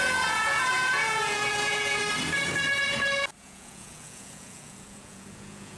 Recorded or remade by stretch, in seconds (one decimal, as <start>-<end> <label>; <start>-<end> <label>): 0.0-2.0 remade; 2.0-3.4 recorded; 3.4-5.8 remade